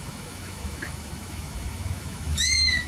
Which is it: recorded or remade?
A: remade